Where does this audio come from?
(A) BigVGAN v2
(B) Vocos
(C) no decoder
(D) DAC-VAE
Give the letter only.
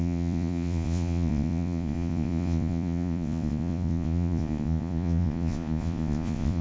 B